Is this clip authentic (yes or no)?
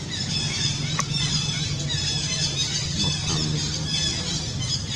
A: yes